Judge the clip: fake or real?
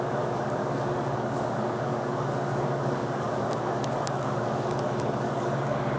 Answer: fake